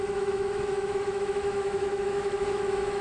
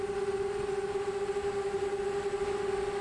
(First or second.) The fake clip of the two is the first